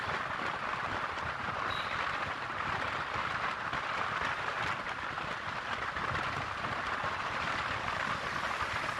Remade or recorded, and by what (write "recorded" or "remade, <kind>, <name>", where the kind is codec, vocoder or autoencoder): recorded